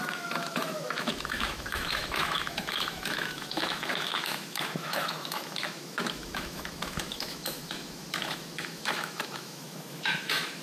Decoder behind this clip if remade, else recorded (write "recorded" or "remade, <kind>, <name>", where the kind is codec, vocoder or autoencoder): remade, autoencoder, DAC-VAE